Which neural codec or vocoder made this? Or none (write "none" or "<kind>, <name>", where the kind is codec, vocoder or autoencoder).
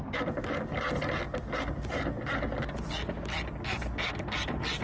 none